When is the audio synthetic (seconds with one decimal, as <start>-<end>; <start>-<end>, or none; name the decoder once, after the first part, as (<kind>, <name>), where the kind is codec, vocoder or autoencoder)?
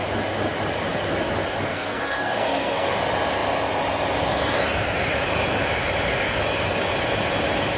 1.7-3.0 (codec, SNAC)